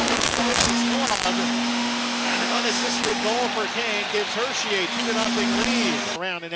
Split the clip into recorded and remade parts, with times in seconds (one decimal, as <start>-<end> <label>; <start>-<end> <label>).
0.0-0.7 remade; 0.7-1.7 recorded; 1.7-3.1 remade; 3.1-6.6 recorded